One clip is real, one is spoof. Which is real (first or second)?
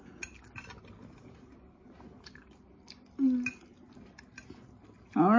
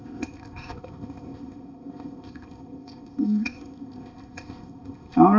first